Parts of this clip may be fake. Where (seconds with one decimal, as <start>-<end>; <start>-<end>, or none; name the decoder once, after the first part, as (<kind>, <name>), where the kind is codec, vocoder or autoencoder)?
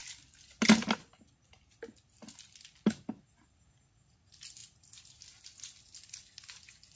none